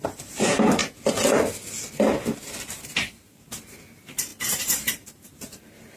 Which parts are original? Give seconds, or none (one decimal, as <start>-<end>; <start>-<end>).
0.8-2.2